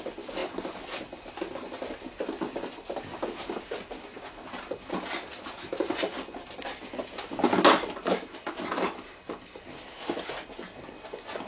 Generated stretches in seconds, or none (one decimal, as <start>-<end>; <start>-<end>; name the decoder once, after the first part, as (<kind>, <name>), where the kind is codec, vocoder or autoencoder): none